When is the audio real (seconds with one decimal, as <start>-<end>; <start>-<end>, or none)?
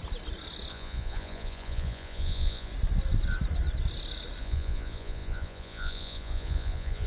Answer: 0.0-0.7; 2.7-4.4